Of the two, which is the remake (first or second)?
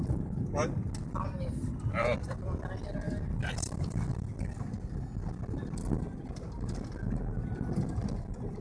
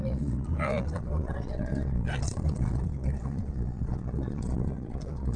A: second